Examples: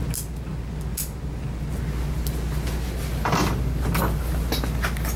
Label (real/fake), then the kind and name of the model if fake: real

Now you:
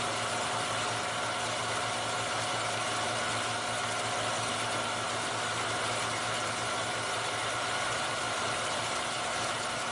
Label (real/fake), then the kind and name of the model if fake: real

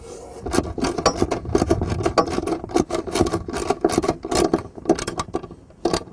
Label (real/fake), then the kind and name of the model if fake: real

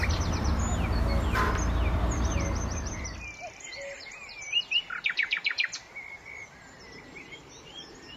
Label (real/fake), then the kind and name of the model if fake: real